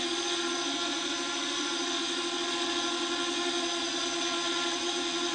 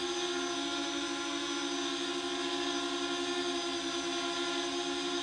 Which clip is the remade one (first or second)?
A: first